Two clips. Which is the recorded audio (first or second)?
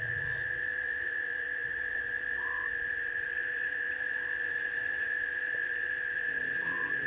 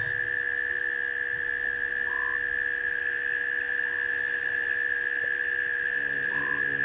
second